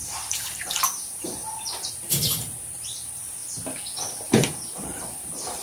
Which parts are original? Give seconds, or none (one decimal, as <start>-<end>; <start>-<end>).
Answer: 3.4-4.3